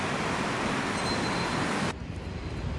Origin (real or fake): real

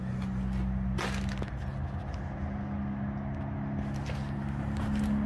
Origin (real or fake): real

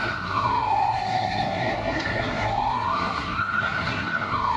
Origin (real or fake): fake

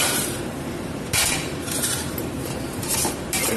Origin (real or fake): fake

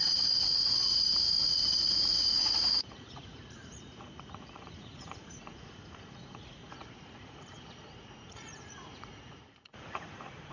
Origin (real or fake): fake